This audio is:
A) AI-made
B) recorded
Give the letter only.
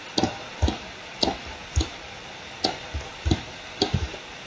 A